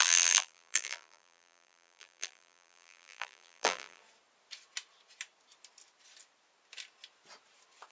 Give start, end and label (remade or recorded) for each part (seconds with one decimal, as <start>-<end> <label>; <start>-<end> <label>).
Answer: 0.0-4.0 remade; 4.0-7.9 recorded